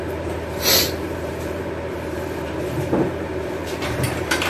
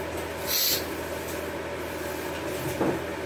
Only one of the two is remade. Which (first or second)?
first